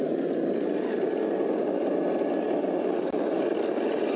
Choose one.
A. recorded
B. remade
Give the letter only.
A